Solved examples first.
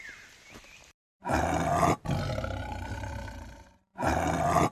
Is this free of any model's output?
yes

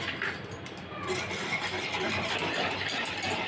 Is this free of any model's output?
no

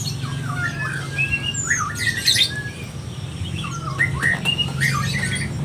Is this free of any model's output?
yes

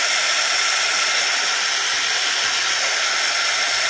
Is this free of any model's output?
yes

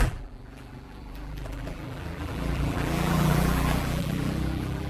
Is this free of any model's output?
no